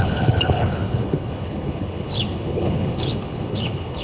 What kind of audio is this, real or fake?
fake